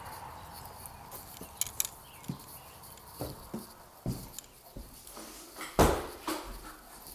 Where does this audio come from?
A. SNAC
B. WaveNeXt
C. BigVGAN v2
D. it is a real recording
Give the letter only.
D